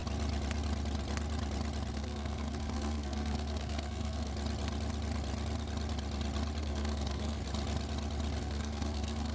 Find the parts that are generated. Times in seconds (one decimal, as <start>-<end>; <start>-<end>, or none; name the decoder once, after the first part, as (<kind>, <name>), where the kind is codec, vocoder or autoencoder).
1.9-4.3 (codec, SNAC); 6.6-7.4; 8.4-9.3